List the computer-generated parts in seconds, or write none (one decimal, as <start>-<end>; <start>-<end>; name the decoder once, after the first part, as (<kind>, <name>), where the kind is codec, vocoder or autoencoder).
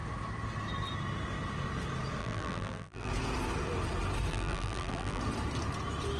2.2-3.1 (vocoder, BigVGAN v2); 4.3-5.2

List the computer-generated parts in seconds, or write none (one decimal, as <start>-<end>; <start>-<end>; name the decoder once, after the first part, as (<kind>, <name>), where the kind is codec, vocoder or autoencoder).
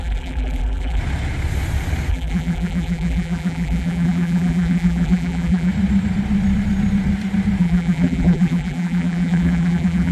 0.0-1.0 (vocoder, BigVGAN v2); 2.1-5.7; 7.6-10.1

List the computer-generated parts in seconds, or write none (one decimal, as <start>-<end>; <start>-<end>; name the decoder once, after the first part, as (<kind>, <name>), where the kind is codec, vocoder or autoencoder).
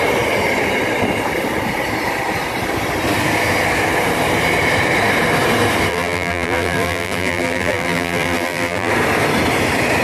5.9-8.9 (vocoder, BigVGAN v2)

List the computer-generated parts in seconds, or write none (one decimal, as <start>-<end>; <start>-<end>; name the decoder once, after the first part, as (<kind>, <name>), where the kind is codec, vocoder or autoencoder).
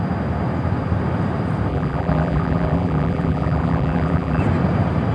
1.7-4.4 (vocoder, BigVGAN v2)